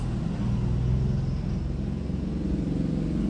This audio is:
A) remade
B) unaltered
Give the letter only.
B